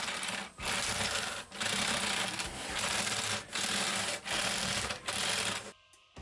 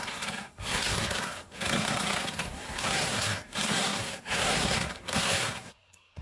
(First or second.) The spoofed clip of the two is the second